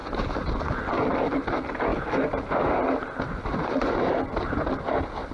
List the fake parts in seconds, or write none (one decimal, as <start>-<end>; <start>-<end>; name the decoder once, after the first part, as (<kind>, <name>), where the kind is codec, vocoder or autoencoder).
none

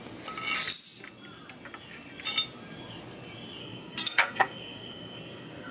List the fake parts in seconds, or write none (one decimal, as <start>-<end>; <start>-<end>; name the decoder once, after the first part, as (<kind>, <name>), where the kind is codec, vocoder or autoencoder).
3.6-5.7 (codec, SNAC)

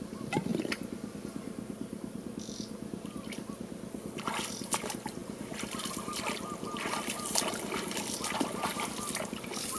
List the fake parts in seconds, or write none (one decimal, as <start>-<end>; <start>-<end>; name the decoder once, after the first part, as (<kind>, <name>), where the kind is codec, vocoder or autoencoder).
none

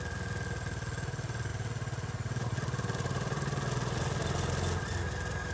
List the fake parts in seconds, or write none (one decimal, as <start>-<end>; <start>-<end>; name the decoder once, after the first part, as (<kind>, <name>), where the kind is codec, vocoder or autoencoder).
none

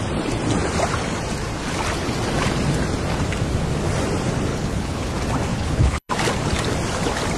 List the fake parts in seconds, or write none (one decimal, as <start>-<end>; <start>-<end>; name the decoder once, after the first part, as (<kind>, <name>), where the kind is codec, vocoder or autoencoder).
4.5-5.1 (codec, HILCodec); 5.5-6.1